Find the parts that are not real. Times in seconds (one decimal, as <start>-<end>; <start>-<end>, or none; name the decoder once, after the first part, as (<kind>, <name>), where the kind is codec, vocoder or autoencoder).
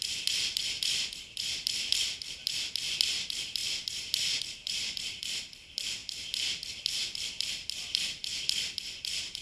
0.0-0.6 (vocoder, BigVGAN v2); 1.2-6.0; 6.7-8.2